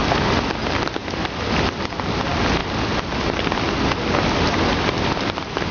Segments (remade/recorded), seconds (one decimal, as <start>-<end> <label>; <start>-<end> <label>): 0.0-5.7 recorded